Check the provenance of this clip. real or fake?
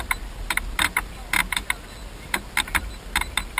real